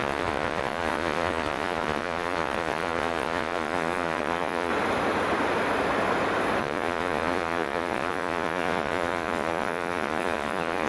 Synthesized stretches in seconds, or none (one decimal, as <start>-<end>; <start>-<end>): 0.0-4.7; 6.6-10.9